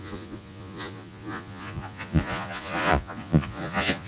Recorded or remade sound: remade